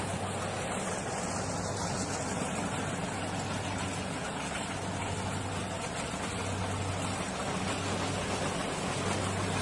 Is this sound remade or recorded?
recorded